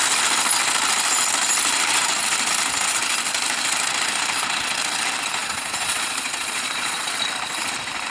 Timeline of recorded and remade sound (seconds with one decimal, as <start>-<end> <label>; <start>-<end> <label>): 0.0-5.4 recorded; 5.4-7.2 remade; 7.2-8.1 recorded